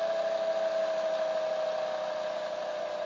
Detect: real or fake real